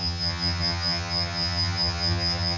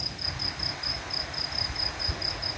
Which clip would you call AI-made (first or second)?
first